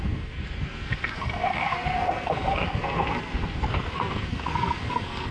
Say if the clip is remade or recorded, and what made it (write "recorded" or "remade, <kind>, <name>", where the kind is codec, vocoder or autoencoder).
remade, codec, SNAC